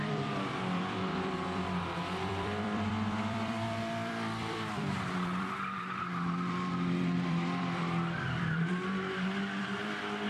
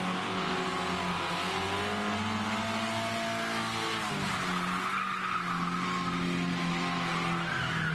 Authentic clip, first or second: second